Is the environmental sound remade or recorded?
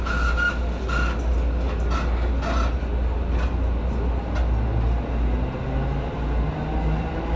recorded